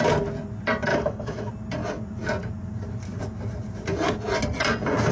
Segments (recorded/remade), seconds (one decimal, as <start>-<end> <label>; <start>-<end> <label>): 0.0-0.9 recorded; 0.9-1.5 remade; 1.5-5.1 recorded